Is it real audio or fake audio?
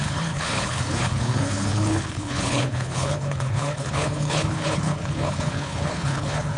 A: fake